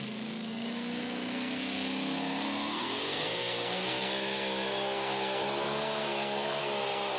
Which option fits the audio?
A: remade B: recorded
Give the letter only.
A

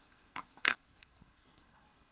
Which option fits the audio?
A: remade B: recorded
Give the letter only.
A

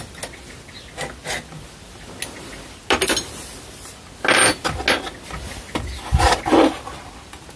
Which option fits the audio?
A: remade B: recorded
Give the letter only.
B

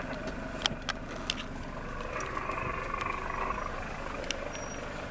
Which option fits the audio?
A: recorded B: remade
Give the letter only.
A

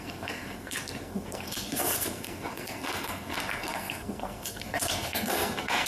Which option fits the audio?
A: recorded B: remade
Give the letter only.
B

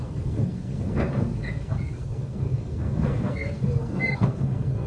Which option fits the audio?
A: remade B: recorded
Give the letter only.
A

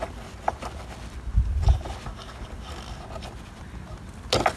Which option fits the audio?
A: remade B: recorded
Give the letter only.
B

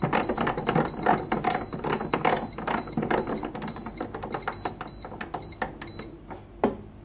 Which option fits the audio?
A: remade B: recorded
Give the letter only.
B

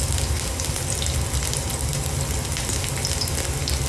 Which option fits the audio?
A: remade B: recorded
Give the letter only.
B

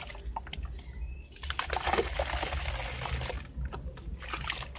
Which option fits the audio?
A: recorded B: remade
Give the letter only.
A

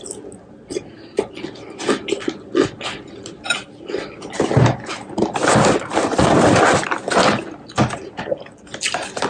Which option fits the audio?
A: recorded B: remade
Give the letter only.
A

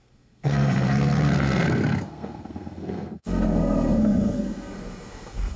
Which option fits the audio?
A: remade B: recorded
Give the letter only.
A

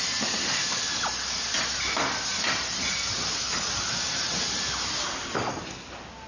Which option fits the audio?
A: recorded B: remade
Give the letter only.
A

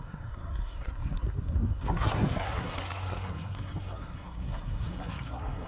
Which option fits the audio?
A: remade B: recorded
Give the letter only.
A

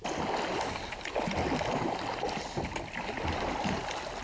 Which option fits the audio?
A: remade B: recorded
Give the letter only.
B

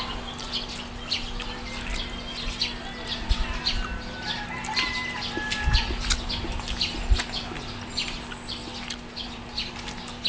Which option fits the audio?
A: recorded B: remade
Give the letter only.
A